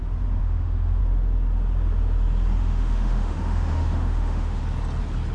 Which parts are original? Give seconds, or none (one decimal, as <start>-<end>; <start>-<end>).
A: 0.0-0.4; 1.0-2.6; 4.6-5.3